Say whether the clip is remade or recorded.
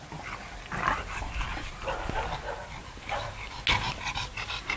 recorded